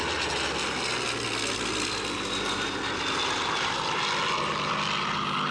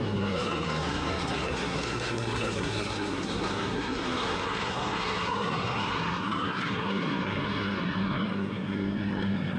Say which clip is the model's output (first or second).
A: second